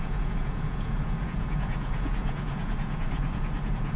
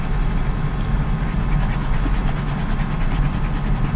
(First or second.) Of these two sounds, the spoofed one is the first